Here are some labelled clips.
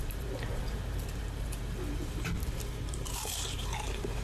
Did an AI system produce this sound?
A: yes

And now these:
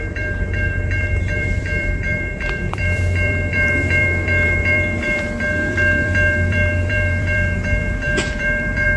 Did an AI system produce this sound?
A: yes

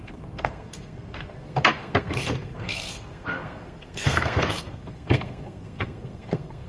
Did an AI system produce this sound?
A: yes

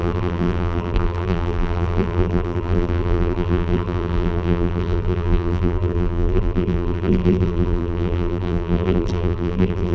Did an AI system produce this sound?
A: yes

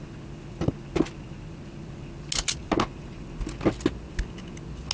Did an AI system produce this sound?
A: no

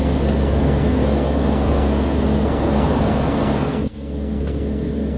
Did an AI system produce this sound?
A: yes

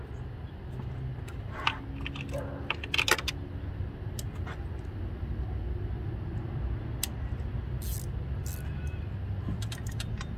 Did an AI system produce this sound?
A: no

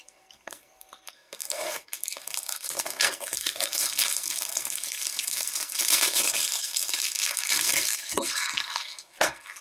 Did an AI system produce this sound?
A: yes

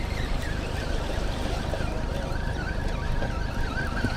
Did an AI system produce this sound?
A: yes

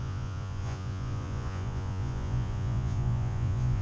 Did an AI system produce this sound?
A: yes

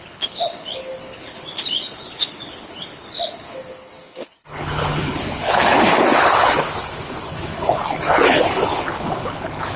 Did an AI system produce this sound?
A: yes